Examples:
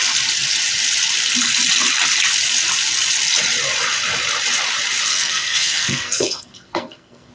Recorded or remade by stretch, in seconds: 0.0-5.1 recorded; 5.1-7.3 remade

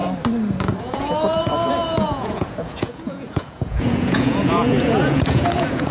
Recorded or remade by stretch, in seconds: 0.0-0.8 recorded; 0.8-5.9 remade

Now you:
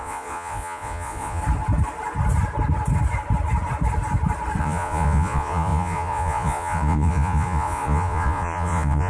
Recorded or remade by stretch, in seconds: 0.0-1.4 remade; 1.4-4.6 recorded; 4.6-9.1 remade

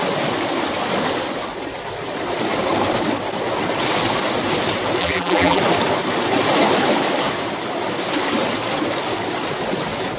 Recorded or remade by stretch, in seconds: 0.0-5.0 recorded; 5.0-5.6 remade; 5.6-10.2 recorded

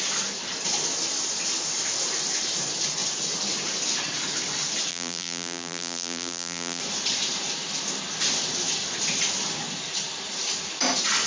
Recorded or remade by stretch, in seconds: 0.0-4.9 recorded; 4.9-6.8 remade; 6.8-11.3 recorded

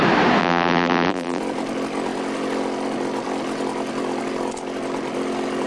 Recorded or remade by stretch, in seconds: 0.0-0.4 recorded; 0.4-1.4 remade; 1.4-5.7 recorded